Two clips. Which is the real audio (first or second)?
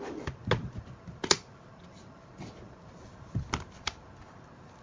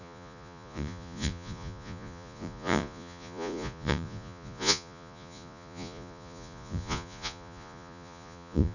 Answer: first